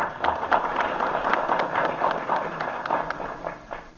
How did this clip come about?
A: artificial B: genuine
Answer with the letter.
B